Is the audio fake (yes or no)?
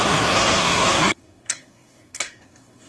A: yes